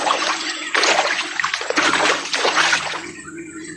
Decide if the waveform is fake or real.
fake